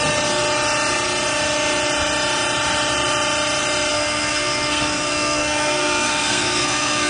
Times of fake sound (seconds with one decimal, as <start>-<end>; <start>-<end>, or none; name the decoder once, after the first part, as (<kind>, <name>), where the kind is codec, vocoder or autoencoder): 3.9-7.1 (codec, SNAC)